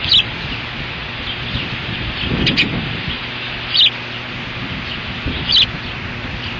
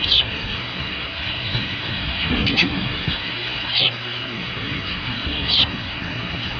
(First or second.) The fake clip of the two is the second